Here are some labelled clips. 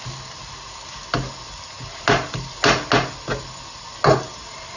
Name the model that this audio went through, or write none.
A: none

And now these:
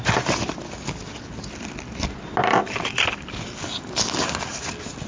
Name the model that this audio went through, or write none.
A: none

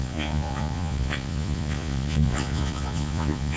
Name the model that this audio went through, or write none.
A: vocoder, Vocos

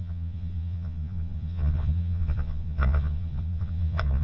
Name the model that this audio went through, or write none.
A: vocoder, Vocos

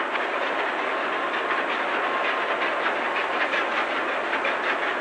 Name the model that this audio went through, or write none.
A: none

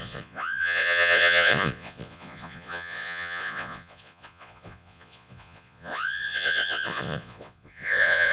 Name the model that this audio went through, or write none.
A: vocoder, Vocos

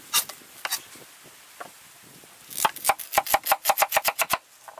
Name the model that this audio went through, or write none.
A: none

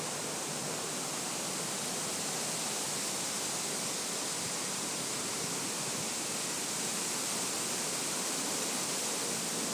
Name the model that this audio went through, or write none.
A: none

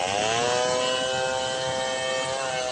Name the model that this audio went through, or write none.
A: none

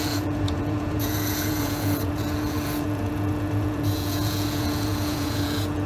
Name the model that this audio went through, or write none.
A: vocoder, Vocos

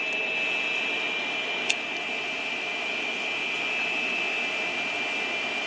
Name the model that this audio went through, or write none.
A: none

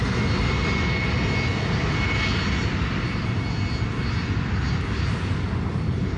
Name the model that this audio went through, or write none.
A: none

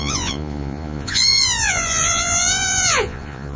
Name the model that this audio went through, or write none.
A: vocoder, Vocos